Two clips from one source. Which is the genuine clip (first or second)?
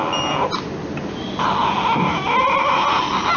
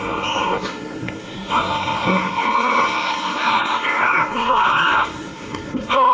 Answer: first